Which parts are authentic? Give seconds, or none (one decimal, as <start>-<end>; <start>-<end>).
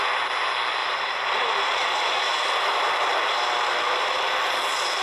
0.0-0.8; 2.2-3.1; 4.2-5.0